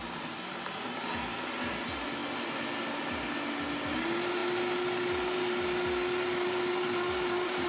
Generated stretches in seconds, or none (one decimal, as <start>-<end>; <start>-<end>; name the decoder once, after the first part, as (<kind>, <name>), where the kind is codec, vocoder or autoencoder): none